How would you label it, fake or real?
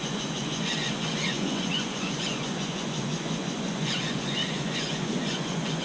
fake